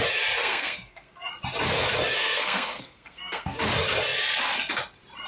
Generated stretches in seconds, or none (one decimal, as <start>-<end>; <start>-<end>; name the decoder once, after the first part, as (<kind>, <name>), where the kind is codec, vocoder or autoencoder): 0.4-1.3 (codec, SNAC); 2.2-3.6